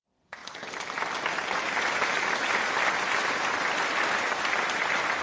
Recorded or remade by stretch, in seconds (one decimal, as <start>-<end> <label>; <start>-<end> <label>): 0.0-5.2 recorded